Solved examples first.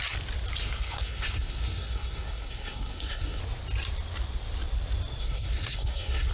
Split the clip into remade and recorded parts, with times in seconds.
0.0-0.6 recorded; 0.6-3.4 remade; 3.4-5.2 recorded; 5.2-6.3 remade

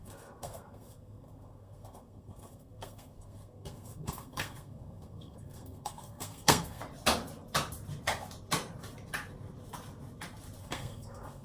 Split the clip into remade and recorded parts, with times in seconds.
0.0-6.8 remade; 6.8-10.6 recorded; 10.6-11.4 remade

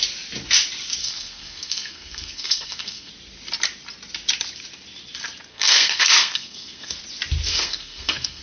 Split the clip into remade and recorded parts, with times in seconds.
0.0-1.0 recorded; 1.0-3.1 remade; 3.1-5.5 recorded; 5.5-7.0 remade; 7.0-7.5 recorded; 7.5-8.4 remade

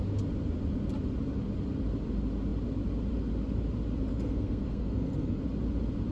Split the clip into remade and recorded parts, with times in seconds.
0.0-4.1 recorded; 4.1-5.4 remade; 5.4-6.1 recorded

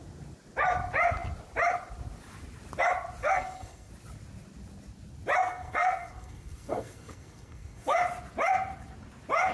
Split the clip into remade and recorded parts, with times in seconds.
0.0-3.2 recorded; 3.2-3.9 remade; 3.9-5.4 recorded; 5.4-8.0 remade; 8.0-9.5 recorded